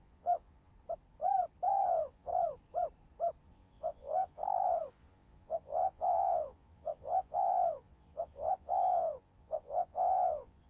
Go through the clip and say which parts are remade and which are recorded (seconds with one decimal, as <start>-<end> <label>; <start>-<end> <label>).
0.0-0.7 remade; 0.7-1.7 recorded; 1.7-2.3 remade; 2.3-3.5 recorded; 3.5-4.4 remade; 4.4-4.9 recorded; 4.9-10.7 remade